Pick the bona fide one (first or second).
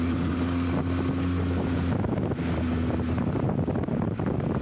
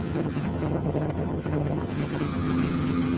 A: first